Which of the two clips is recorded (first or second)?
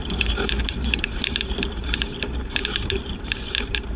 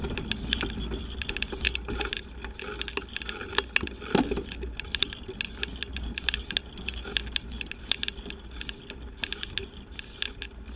second